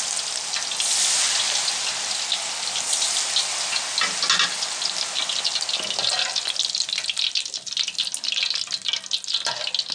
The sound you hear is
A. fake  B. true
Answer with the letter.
B